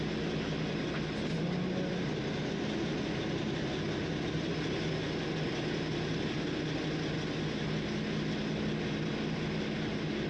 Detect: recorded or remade recorded